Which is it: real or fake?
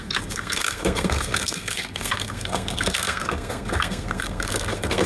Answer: fake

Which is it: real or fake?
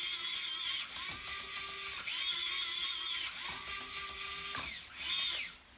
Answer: real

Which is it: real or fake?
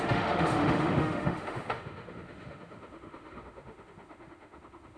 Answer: fake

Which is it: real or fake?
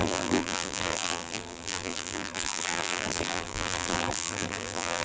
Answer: fake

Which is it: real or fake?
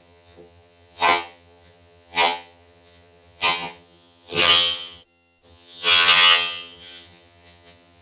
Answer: fake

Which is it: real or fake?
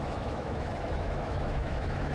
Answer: fake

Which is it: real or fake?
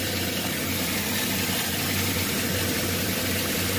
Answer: fake